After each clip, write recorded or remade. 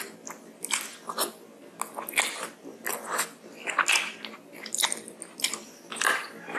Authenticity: recorded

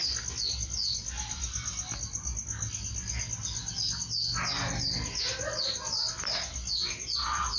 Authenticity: recorded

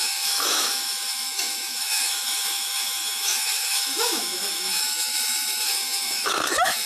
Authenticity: remade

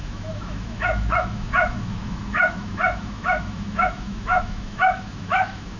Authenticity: remade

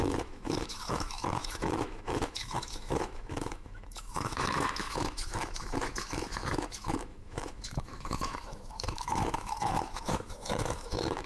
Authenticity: remade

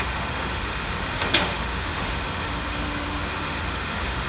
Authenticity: remade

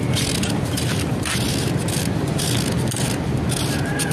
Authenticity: recorded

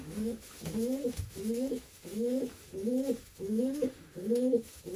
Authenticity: remade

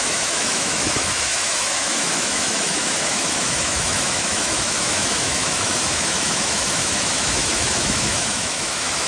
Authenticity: remade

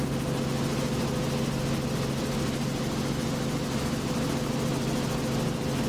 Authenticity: recorded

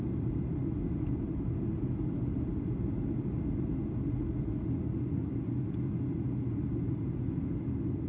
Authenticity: recorded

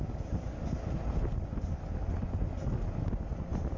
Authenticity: recorded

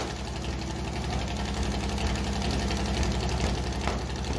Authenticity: recorded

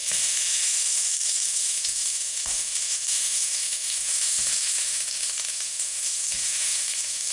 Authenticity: remade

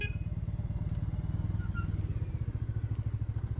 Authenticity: recorded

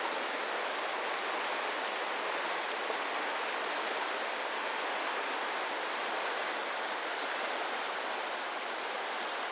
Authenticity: recorded